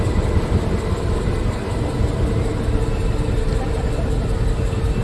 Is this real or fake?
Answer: real